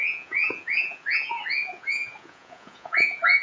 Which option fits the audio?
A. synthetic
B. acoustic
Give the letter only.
A